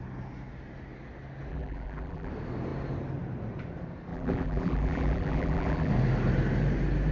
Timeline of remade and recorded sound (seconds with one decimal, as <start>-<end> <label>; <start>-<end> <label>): 0.0-1.5 recorded; 1.5-2.3 remade; 2.3-4.1 recorded; 4.1-5.9 remade; 5.9-7.1 recorded